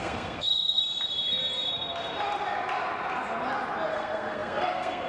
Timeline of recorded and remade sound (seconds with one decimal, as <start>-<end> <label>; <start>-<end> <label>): 0.0-0.8 remade; 0.8-3.9 recorded; 3.9-5.1 remade